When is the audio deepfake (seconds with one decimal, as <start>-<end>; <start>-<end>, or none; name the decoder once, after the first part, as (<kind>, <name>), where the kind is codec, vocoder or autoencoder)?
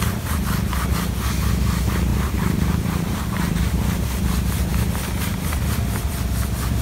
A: 2.1-4.2 (vocoder, BigVGAN v2)